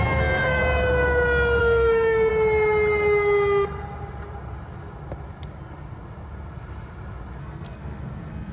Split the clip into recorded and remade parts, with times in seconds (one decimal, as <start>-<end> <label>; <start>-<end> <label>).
0.0-0.6 remade; 0.6-1.6 recorded; 1.6-2.3 remade; 2.3-7.4 recorded; 7.4-8.5 remade